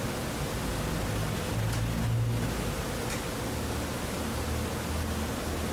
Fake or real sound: real